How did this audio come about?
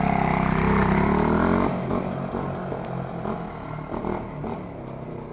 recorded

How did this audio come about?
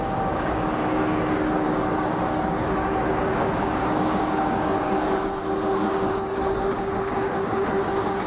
remade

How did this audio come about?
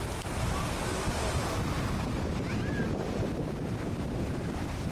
recorded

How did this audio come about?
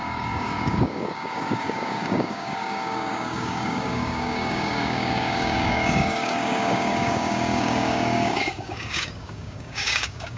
remade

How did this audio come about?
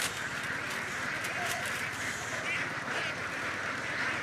recorded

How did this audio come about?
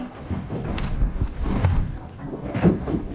remade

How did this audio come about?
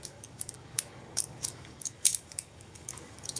remade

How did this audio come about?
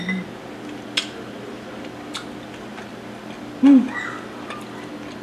recorded